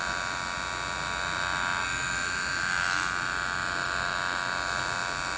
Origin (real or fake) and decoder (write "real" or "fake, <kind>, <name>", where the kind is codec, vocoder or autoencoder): real